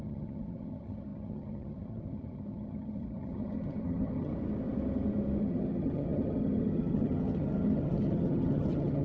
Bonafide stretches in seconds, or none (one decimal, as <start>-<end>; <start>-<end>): 4.3-5.4